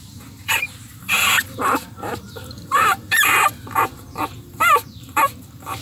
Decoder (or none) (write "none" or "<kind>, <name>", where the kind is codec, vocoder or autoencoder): vocoder, BigVGAN v2